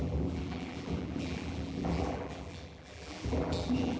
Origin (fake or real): fake